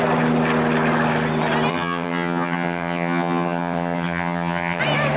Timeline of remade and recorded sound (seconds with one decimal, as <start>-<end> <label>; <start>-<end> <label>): 0.0-1.7 recorded; 1.7-4.8 remade; 4.8-5.2 recorded